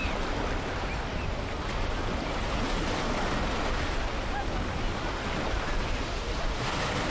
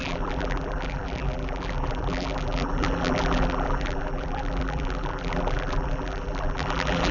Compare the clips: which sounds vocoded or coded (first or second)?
second